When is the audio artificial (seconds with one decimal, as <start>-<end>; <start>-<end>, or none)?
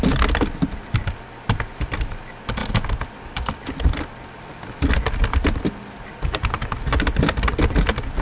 none